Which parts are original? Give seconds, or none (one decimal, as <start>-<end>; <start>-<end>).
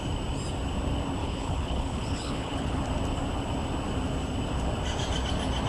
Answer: 0.0-1.2; 2.8-5.7